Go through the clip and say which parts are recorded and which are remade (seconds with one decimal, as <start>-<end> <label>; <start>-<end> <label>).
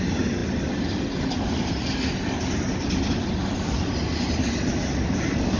0.0-5.6 recorded